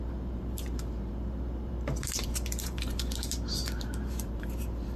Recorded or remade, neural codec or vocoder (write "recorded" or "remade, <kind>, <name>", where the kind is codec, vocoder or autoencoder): remade, vocoder, BigVGAN v2